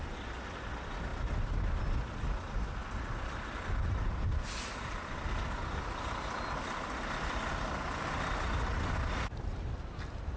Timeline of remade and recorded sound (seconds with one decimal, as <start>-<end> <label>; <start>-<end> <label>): 0.0-10.4 recorded